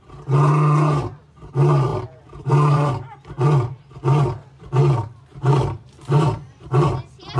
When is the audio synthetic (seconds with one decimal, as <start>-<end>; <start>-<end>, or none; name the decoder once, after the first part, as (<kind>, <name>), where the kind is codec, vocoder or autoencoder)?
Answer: 1.9-2.9 (vocoder, BigVGAN v2); 5.3-6.9